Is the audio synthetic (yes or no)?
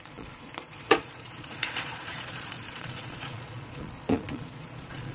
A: yes